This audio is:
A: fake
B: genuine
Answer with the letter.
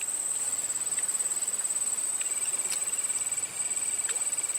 B